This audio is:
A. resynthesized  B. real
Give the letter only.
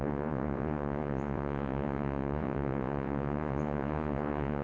A